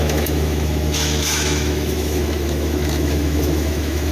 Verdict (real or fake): fake